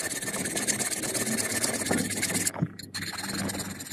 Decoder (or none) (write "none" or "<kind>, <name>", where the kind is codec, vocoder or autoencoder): none